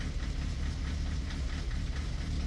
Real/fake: real